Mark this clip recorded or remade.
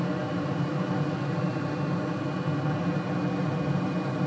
recorded